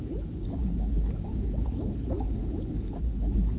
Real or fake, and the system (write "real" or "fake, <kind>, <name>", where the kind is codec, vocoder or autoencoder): fake, codec, HILCodec